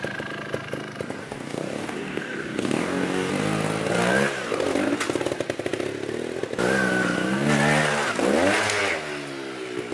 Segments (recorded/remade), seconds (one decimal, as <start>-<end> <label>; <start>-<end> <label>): 0.0-1.2 recorded; 1.2-3.3 remade; 3.3-9.9 recorded